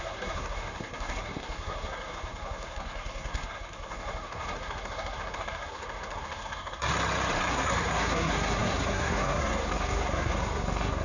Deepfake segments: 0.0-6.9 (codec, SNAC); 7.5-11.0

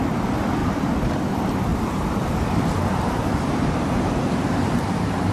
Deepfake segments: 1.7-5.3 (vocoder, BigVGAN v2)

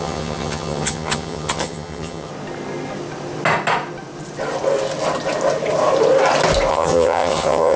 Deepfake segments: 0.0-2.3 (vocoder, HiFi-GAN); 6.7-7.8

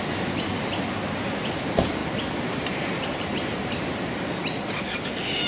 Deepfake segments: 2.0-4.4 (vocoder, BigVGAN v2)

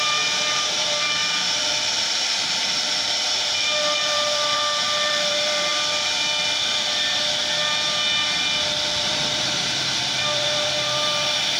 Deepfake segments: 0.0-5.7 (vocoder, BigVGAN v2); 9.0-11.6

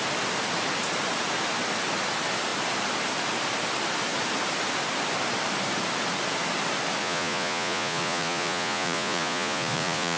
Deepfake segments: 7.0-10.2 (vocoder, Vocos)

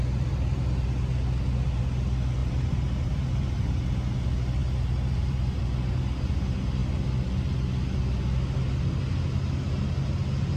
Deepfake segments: 2.4-3.7 (vocoder, BigVGAN v2); 4.6-5.6